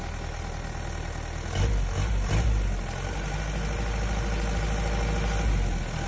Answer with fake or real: real